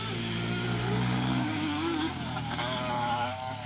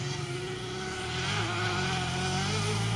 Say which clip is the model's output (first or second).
first